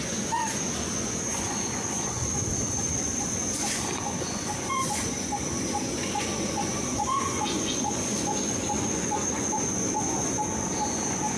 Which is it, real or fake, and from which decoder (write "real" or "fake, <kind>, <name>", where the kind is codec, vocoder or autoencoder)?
fake, vocoder, Vocos